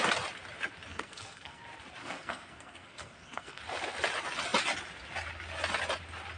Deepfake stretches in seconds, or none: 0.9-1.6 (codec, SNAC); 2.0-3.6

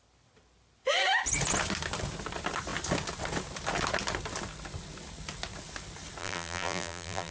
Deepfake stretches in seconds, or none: 6.2-7.3 (vocoder, BigVGAN v2)

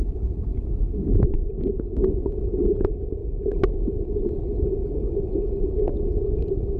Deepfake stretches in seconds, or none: none

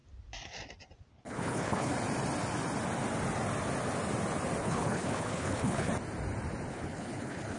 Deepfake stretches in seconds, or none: 1.1-1.9 (codec, HILCodec); 4.6-5.9; 6.7-7.6

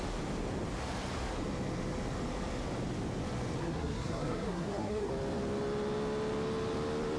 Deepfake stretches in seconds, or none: 3.6-5.1 (codec, SNAC)

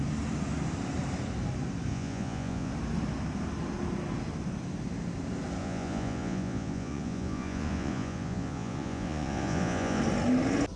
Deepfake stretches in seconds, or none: 1.9-2.7 (vocoder, Vocos); 5.6-10.0